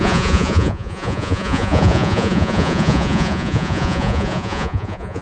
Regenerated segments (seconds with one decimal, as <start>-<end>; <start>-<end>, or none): 0.0-5.2